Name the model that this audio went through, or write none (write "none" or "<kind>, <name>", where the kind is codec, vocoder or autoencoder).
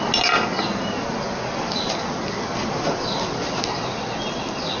none